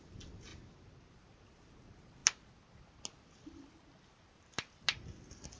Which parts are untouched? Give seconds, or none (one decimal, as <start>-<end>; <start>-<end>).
0.0-5.6